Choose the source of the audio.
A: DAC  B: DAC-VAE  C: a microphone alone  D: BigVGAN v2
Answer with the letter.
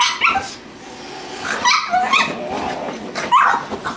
C